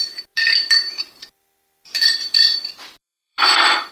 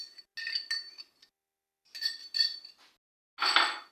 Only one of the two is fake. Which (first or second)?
first